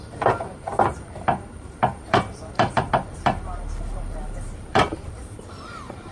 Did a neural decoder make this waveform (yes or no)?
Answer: yes